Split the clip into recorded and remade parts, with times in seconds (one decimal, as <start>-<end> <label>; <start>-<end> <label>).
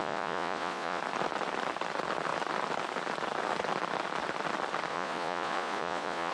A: 0.0-1.0 remade; 1.0-4.9 recorded; 4.9-6.3 remade